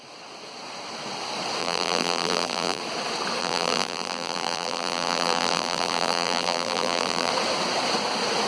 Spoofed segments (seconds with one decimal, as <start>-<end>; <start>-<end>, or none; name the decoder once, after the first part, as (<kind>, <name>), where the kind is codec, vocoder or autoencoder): 1.6-2.8 (vocoder, BigVGAN v2); 3.4-7.3